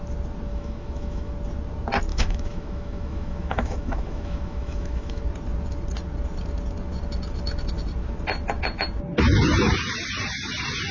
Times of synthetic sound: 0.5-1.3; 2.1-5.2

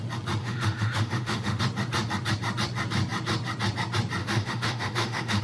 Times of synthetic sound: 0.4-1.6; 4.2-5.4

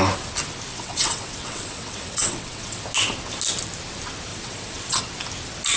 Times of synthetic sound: 0.7-2.8; 4.3-5.0

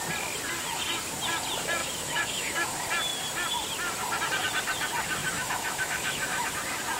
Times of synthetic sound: 1.8-2.7; 5.2-6.5